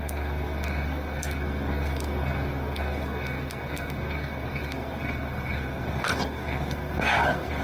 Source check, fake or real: fake